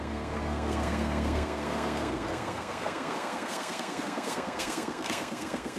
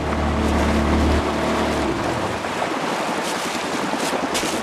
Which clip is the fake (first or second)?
first